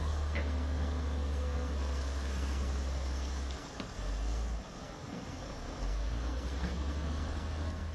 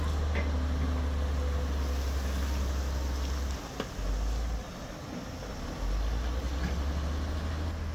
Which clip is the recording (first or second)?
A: second